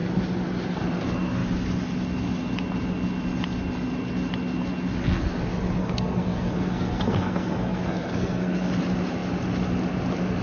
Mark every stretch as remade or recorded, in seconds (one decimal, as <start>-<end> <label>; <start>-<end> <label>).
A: 0.0-5.8 recorded; 5.8-8.7 remade; 8.7-10.4 recorded